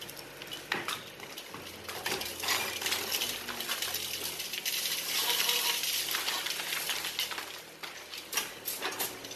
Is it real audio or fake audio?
real